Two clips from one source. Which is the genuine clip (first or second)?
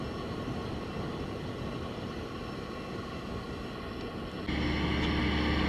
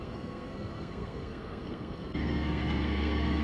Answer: first